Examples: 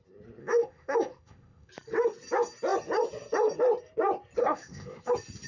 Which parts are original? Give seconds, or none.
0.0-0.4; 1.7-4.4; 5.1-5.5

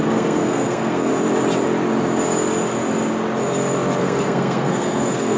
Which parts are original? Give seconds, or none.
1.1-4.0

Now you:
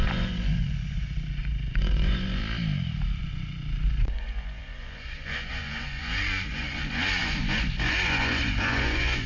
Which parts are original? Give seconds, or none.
2.4-3.2

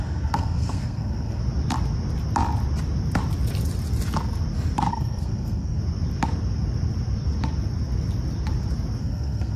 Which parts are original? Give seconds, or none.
1.4-4.9; 5.8-9.0